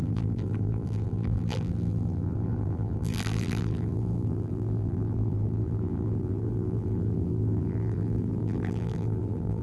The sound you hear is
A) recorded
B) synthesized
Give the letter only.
B